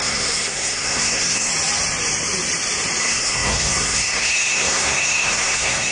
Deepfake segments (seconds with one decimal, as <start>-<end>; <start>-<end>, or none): 0.0-1.5; 3.0-5.9